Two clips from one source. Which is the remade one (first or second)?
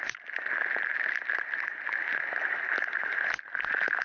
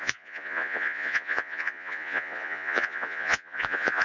second